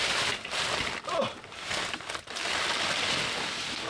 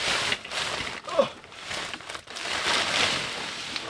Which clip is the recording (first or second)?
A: first